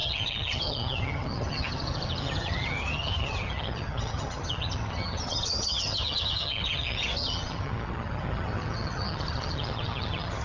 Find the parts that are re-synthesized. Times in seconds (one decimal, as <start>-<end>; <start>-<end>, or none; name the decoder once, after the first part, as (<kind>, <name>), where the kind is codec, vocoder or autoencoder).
0.0-10.4 (vocoder, HiFi-GAN)